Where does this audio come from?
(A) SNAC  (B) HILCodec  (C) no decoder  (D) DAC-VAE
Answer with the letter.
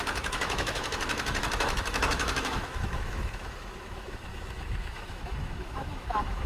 D